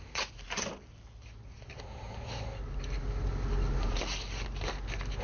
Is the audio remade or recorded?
recorded